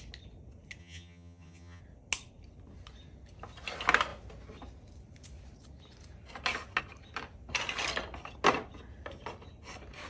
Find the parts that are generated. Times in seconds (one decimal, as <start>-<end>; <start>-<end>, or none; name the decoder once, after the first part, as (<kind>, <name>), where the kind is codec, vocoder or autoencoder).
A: 0.8-1.8 (vocoder, HiFi-GAN)